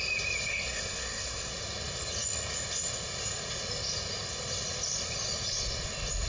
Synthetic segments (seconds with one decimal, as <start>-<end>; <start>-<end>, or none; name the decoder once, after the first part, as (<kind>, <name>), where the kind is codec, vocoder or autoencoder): 0.5-1.5 (codec, SNAC)